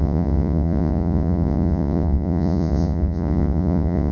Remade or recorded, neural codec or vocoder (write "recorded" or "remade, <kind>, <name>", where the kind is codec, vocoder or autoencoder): remade, vocoder, Vocos